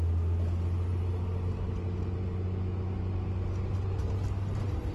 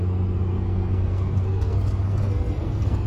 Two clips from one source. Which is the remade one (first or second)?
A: second